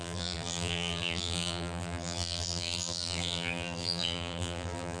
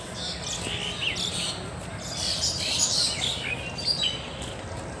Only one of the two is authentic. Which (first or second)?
second